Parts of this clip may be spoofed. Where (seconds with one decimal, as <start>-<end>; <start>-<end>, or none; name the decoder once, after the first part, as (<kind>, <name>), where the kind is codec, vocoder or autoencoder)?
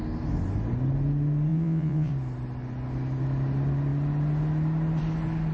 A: 1.5-2.1 (vocoder, Vocos)